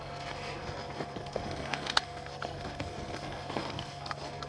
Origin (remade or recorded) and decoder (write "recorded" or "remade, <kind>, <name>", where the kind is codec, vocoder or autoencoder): remade, codec, SNAC